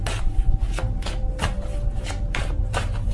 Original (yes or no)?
yes